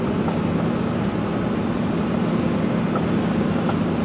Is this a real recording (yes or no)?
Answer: yes